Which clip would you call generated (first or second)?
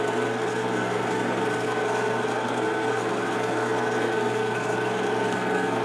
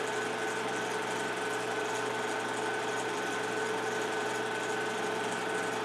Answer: first